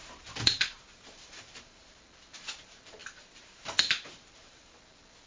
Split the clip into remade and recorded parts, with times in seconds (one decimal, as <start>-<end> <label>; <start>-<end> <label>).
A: 0.0-1.9 remade; 1.9-3.0 recorded; 3.0-4.8 remade; 4.8-5.3 recorded